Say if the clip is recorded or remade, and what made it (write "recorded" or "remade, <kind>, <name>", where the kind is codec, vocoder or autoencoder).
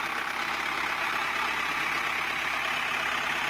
recorded